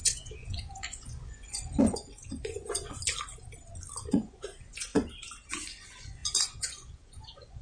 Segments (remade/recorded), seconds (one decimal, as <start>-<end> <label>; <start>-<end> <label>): 0.0-3.0 remade; 3.0-4.1 recorded; 4.1-4.9 remade; 4.9-5.5 recorded; 5.5-7.6 remade